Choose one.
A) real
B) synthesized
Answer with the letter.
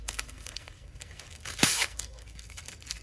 B